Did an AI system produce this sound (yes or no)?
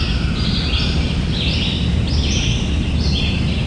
no